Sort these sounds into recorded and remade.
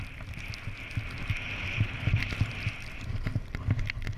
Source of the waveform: recorded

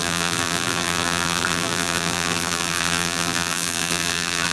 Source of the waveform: remade